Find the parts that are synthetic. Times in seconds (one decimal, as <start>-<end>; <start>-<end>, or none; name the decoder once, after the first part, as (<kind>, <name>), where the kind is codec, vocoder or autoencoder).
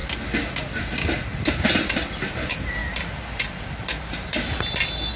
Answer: none